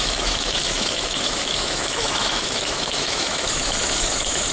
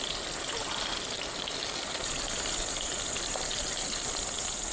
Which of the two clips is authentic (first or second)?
second